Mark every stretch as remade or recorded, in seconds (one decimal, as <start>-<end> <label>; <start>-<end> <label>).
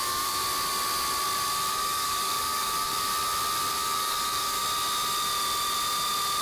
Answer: 0.0-0.4 remade; 0.4-1.7 recorded; 1.7-3.1 remade; 3.1-3.7 recorded; 3.7-4.6 remade; 4.6-6.4 recorded